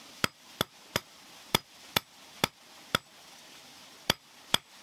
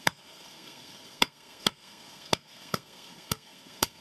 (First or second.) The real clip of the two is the first